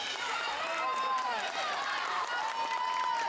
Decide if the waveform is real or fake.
real